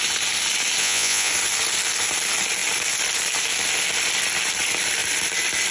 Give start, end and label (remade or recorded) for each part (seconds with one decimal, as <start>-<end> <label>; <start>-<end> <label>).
0.0-0.8 recorded; 0.8-1.3 remade; 1.3-5.7 recorded